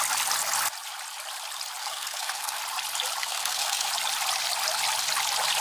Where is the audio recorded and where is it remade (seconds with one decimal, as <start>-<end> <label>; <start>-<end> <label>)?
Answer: 0.0-1.8 recorded; 1.8-2.6 remade; 2.6-3.2 recorded; 3.2-3.9 remade; 3.9-5.6 recorded